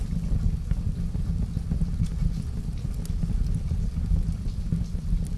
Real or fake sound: real